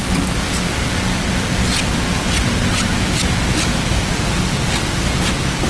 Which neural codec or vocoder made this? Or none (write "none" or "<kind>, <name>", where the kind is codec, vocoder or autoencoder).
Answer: none